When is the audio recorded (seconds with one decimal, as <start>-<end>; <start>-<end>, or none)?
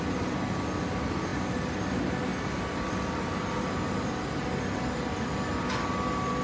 0.0-6.4